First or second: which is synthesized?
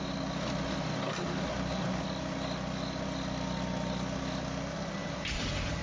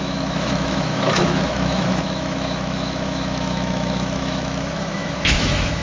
second